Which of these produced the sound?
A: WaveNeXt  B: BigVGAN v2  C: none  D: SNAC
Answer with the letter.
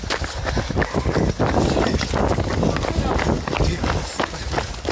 C